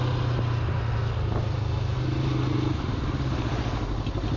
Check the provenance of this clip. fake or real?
real